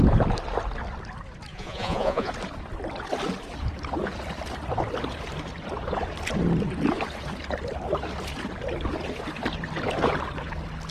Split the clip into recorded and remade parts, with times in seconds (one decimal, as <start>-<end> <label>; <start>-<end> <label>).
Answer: 0.0-1.5 recorded; 1.5-2.3 remade; 2.3-10.9 recorded